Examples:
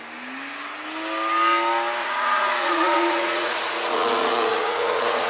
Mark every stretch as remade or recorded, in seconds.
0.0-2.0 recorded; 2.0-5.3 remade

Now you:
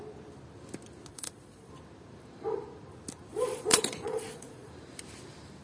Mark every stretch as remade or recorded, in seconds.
0.0-1.1 recorded; 1.1-1.7 remade; 1.7-3.3 recorded; 3.3-4.7 remade; 4.7-5.6 recorded

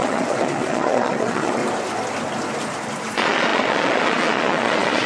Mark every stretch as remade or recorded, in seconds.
0.0-1.6 remade; 1.6-3.1 recorded; 3.1-5.1 remade

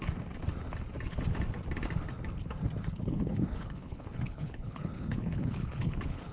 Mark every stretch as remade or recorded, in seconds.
0.0-2.9 recorded; 2.9-6.3 remade